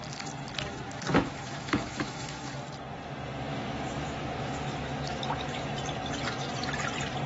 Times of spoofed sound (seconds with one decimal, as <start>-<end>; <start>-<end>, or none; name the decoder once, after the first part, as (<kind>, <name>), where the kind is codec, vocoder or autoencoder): 0.7-2.5 (autoencoder, DAC-VAE); 3.5-5.7